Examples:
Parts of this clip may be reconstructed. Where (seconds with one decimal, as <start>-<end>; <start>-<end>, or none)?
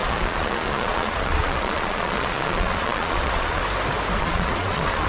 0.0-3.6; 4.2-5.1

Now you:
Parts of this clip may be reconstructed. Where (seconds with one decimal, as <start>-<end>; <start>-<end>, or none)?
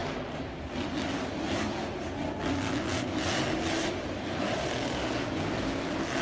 none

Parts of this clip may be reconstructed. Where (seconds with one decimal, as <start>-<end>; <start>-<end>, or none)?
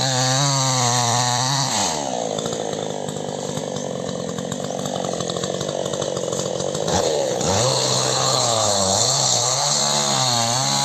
6.9-9.8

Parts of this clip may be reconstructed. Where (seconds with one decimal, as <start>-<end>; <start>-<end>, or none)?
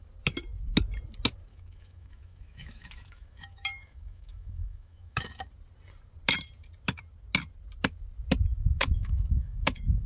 1.5-5.4; 8.5-10.1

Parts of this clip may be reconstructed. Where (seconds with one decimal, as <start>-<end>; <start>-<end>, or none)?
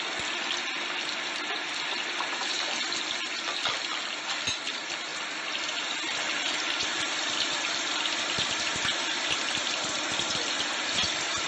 5.1-8.4